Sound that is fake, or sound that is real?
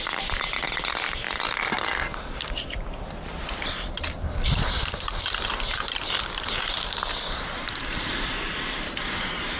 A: fake